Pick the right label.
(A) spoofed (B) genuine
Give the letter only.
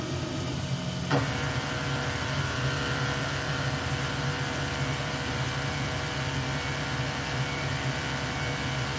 B